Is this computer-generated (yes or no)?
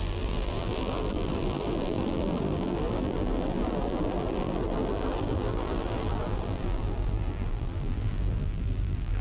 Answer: yes